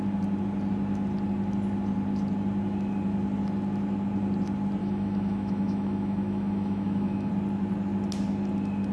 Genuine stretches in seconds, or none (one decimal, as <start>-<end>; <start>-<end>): 0.0-4.8; 7.3-8.9